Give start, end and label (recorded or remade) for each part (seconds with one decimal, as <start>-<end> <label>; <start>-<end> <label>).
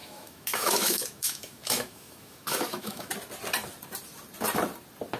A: 0.0-3.1 remade; 3.1-5.2 recorded